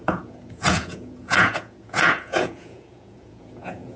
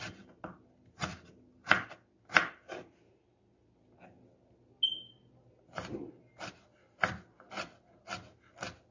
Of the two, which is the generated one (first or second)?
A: first